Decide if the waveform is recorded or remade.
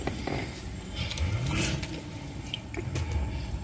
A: recorded